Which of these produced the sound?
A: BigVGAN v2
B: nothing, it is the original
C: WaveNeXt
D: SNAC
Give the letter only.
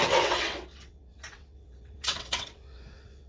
C